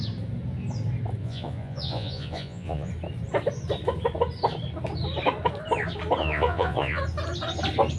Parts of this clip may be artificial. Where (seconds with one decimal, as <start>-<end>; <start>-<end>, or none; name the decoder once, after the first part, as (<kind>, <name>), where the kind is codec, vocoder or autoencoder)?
1.2-2.9 (vocoder, Vocos); 6.2-7.0